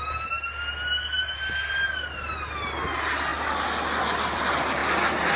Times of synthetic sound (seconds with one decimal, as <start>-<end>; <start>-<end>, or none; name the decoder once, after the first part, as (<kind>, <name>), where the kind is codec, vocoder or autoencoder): none